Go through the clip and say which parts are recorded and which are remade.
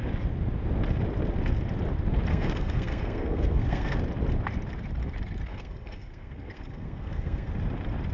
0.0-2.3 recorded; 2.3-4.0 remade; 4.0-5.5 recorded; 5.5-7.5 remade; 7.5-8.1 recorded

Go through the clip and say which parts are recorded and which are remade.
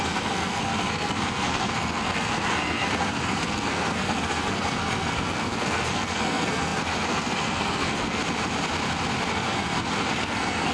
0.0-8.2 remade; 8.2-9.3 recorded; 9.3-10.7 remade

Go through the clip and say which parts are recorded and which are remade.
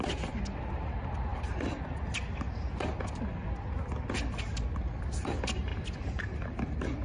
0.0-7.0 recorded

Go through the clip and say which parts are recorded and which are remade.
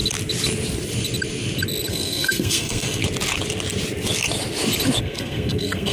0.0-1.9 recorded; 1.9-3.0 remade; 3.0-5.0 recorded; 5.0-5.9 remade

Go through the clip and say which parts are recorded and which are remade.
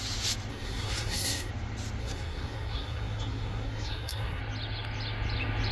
0.0-0.5 recorded; 0.5-1.5 remade; 1.5-2.0 recorded; 2.0-4.4 remade; 4.4-5.7 recorded